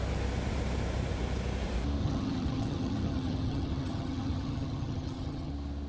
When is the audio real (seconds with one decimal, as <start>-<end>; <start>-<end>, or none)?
0.0-2.0; 5.5-5.9